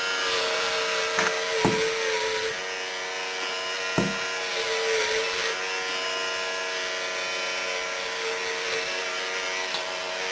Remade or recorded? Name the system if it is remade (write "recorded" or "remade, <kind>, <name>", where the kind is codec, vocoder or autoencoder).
recorded